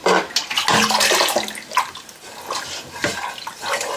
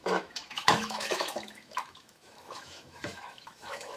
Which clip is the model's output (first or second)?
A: second